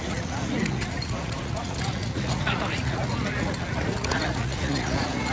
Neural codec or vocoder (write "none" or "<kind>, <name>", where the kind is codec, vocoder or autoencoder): vocoder, Vocos